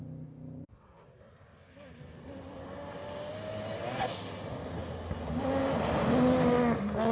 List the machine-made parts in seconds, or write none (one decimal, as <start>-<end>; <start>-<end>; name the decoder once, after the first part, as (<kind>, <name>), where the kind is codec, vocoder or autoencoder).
none